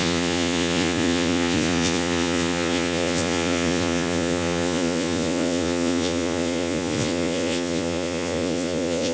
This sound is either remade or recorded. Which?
remade